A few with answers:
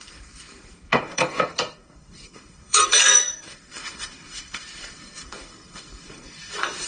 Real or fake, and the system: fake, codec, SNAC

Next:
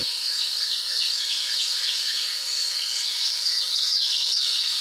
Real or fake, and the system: fake, codec, SNAC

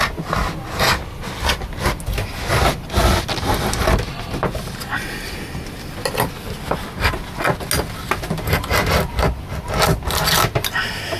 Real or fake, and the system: real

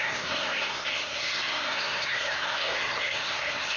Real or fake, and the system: fake, codec, SNAC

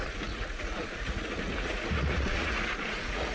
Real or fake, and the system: fake, vocoder, Vocos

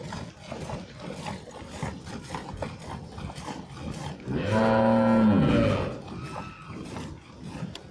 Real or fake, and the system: real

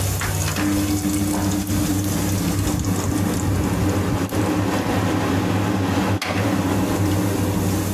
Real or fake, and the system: real